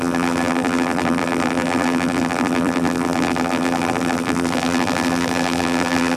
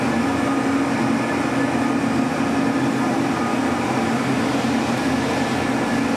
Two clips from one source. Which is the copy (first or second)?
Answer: first